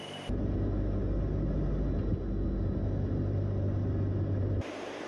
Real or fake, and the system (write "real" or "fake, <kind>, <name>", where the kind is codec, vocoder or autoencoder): real